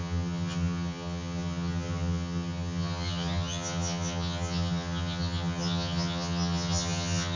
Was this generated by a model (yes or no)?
yes